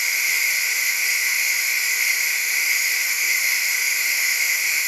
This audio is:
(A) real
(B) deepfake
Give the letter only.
B